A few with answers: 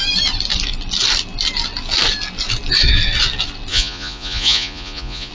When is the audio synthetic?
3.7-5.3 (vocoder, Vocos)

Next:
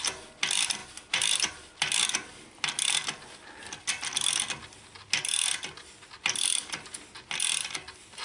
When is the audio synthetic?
none

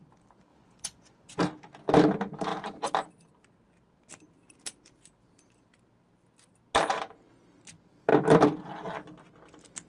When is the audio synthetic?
0.5-1.4 (vocoder, Vocos)

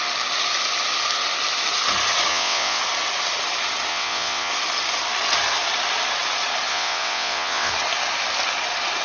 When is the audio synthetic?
2.3-2.8 (vocoder, WaveNeXt); 3.9-4.5; 6.7-7.7

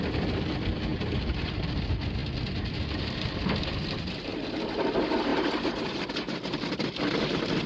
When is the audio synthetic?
0.9-1.8 (vocoder, BigVGAN v2)

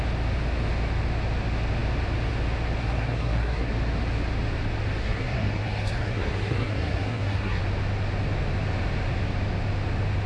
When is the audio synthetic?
2.8-3.7 (codec, SNAC); 5.0-7.6

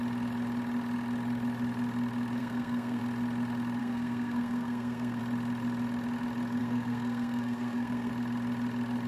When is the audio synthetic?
2.4-3.0 (codec, SNAC); 3.8-5.2; 6.6-8.1